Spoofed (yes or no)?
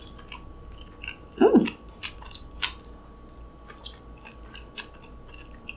no